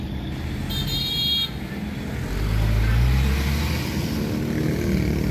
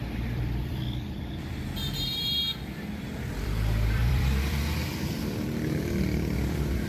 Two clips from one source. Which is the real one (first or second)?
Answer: first